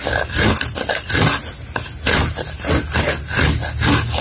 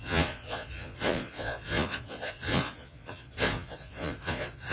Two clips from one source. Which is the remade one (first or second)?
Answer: second